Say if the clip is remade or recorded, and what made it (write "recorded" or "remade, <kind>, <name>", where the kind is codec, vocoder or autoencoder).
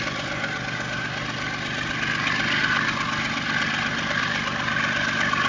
recorded